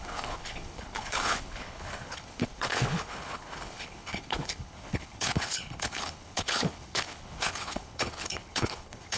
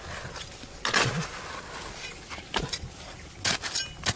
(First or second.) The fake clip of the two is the first